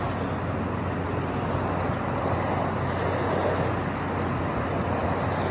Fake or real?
real